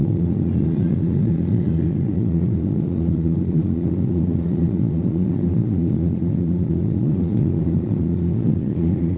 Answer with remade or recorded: remade